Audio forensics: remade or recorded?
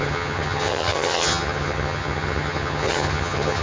remade